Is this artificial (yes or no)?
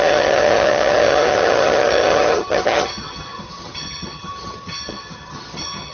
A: yes